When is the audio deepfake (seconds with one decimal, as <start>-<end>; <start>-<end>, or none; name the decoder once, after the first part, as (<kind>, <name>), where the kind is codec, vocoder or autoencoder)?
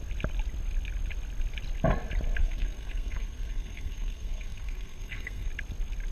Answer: 2.4-5.5 (codec, SNAC)